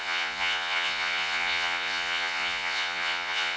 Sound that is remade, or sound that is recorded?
remade